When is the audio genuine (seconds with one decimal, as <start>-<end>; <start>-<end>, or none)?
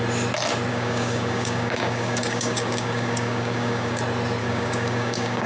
0.0-0.7; 4.0-4.4